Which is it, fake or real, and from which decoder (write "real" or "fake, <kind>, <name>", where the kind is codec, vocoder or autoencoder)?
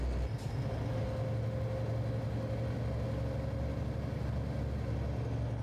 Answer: real